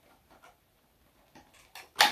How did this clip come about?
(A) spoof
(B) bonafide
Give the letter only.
B